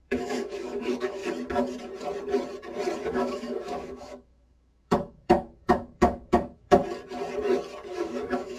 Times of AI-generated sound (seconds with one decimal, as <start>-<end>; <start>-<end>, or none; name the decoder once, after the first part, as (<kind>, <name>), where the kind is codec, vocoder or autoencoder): 0.0-1.2 (autoencoder, DAC-VAE); 3.0-6.8; 7.9-8.6